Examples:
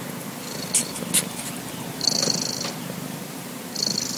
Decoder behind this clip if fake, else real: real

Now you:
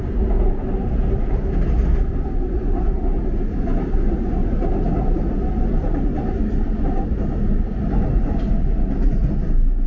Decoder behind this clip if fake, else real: real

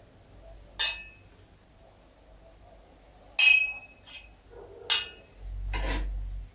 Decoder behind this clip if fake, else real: real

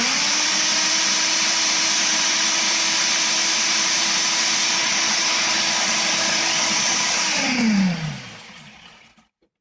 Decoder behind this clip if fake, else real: fake, vocoder, BigVGAN v2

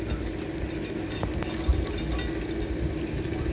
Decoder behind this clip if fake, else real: real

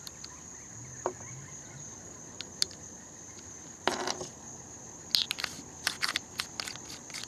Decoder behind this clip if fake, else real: real